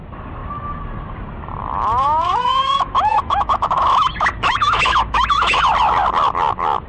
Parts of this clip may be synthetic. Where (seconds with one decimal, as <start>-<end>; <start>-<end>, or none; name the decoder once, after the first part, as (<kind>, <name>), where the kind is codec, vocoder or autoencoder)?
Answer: 1.6-5.7 (autoencoder, DAC-VAE)